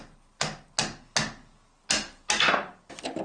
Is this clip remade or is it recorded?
recorded